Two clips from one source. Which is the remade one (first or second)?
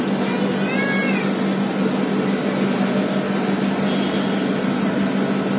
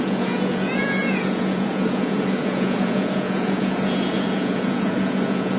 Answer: second